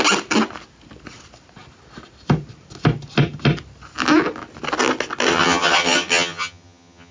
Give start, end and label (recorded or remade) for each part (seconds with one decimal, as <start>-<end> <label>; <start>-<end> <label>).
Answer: 0.0-5.3 recorded; 5.3-7.1 remade